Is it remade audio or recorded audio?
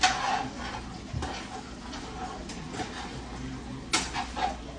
recorded